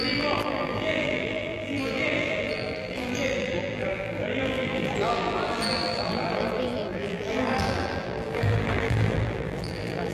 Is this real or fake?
fake